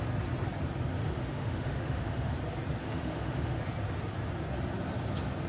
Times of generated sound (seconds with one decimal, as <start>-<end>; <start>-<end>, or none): 1.0-2.3; 2.8-3.6